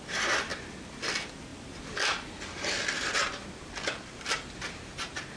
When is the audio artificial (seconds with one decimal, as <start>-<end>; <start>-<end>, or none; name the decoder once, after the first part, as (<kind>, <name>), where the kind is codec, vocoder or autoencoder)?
none